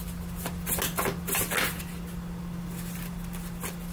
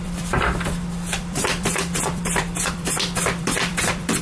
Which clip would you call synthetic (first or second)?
second